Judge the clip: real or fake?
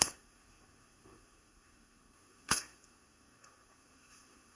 fake